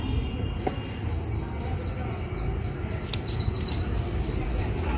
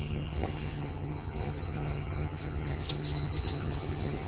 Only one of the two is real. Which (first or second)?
first